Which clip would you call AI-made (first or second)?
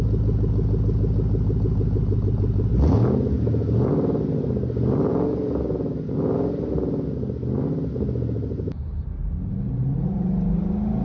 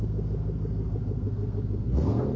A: second